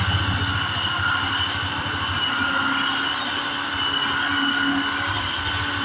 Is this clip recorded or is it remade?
recorded